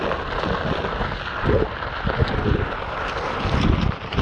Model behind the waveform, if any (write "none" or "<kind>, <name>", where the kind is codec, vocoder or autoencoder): none